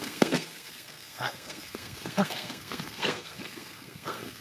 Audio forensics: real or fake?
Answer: fake